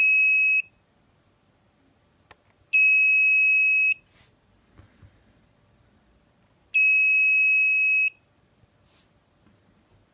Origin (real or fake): real